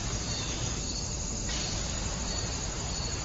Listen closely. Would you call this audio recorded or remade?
remade